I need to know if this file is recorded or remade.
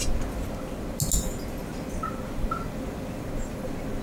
recorded